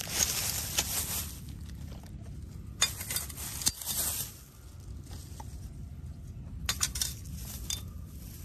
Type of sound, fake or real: real